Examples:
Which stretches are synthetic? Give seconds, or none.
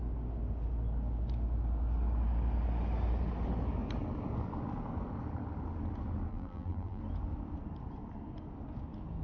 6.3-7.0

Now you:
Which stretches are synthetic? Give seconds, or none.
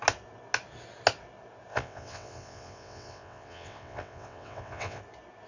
1.7-5.0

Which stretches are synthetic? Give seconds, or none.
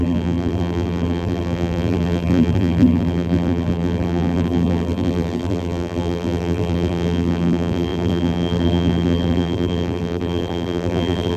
0.0-11.4